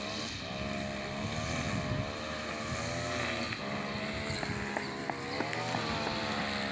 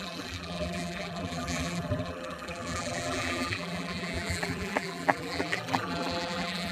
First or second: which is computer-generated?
second